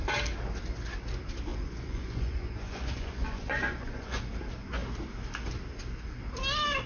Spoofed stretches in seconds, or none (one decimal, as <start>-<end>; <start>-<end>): 1.5-4.2